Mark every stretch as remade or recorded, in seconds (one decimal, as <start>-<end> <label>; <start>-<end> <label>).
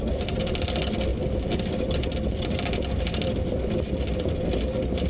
0.0-5.1 recorded